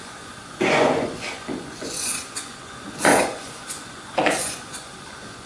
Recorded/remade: remade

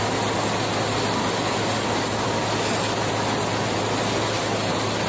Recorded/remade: recorded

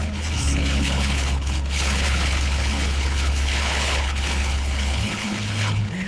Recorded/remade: remade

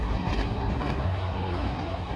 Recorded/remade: remade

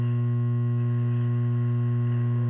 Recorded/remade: recorded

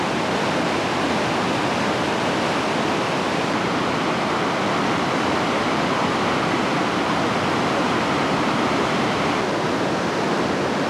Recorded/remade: recorded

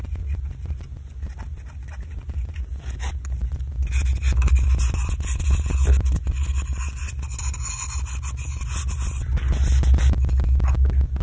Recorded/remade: recorded